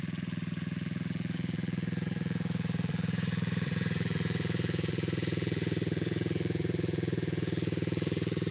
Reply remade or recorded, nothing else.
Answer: remade